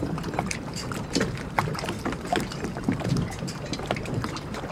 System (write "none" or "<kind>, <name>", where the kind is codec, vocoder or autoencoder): vocoder, BigVGAN v2